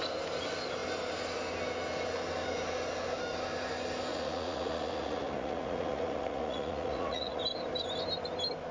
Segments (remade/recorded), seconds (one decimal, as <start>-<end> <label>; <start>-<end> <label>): 0.0-4.1 recorded; 4.1-7.4 remade; 7.4-8.7 recorded